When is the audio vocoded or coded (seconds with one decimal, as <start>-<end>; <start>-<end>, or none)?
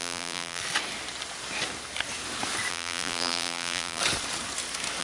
0.0-0.6; 2.7-4.0